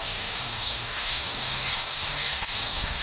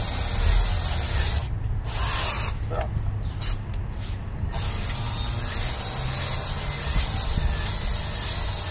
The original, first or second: second